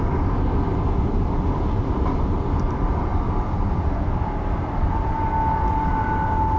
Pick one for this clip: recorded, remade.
recorded